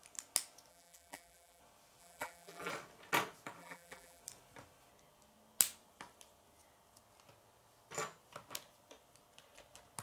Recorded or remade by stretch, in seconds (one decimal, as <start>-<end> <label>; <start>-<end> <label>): 0.0-0.7 recorded; 0.7-1.6 remade; 1.6-2.0 recorded; 2.0-2.7 remade; 2.7-3.6 recorded; 3.6-4.2 remade; 4.2-10.0 recorded